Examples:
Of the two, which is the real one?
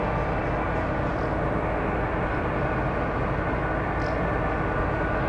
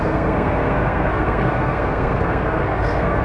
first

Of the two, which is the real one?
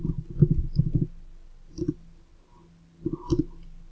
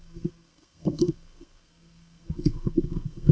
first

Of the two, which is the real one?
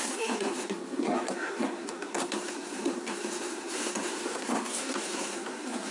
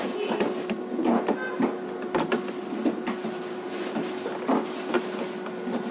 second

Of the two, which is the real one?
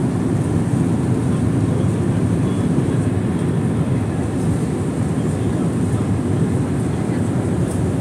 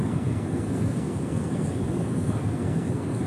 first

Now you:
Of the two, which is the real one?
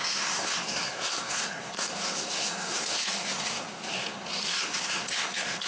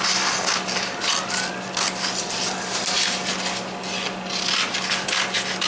second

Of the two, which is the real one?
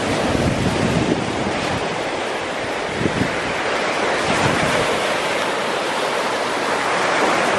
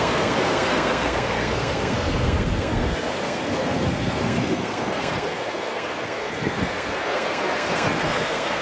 first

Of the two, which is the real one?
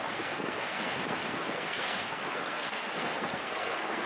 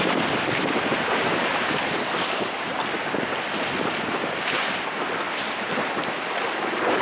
second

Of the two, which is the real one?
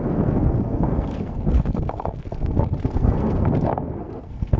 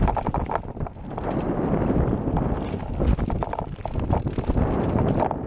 second